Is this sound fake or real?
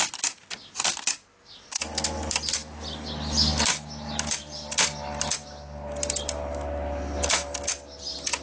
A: real